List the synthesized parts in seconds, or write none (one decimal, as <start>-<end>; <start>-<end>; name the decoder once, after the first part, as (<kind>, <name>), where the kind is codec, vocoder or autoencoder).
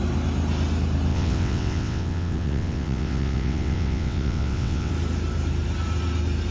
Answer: 1.1-4.9 (vocoder, WaveNeXt)